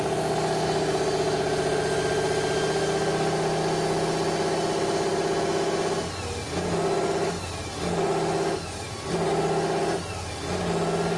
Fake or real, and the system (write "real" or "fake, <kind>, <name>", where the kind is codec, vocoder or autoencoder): real